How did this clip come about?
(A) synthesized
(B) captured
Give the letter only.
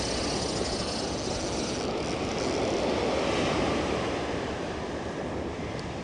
B